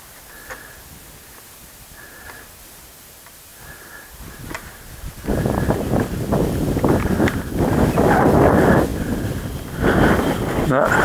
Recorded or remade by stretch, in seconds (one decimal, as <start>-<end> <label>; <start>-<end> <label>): 0.0-11.0 recorded